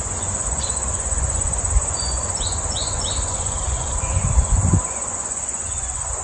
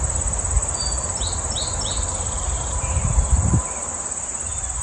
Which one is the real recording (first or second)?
second